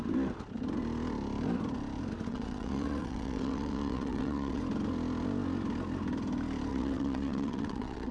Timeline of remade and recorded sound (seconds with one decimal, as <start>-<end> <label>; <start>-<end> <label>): 0.0-2.3 recorded; 2.3-4.6 remade; 4.6-6.7 recorded; 6.7-8.1 remade